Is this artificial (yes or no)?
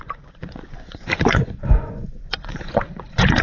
yes